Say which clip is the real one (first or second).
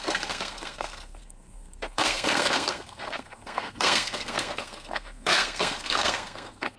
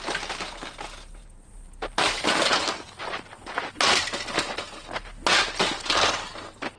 second